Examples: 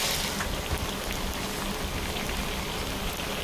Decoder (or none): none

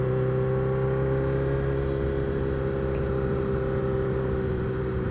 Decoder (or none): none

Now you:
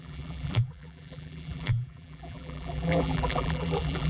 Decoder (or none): vocoder, BigVGAN v2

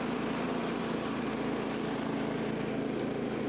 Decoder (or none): none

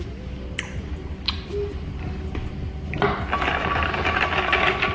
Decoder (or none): none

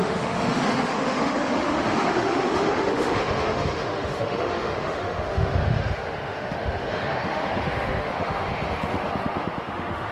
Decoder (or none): autoencoder, DAC-VAE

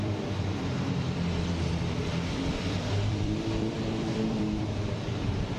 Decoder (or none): vocoder, BigVGAN v2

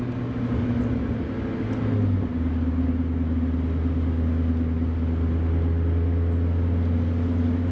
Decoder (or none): none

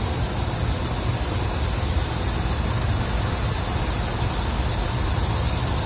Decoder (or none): none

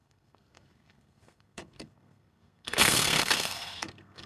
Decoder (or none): codec, SNAC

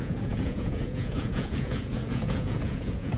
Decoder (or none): vocoder, Vocos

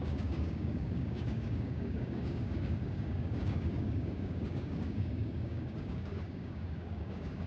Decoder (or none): codec, DAC